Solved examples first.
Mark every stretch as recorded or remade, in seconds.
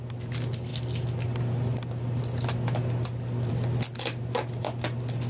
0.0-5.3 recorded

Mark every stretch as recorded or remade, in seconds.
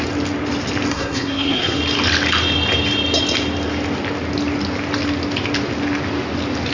0.0-0.9 recorded; 0.9-1.8 remade; 1.8-6.7 recorded